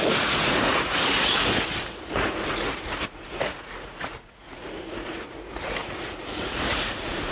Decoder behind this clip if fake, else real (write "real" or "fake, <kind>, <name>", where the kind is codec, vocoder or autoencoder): fake, vocoder, Vocos